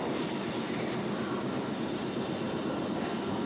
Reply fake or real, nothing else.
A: real